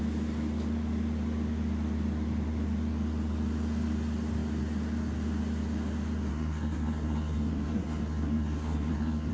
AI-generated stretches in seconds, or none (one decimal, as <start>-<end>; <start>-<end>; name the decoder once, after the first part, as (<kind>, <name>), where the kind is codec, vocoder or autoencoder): 6.3-9.3 (codec, SNAC)